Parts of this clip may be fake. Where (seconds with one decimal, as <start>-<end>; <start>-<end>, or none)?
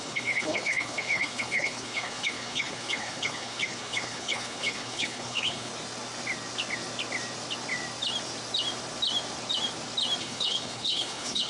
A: 0.0-5.7; 10.2-11.5